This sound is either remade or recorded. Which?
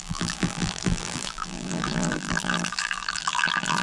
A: remade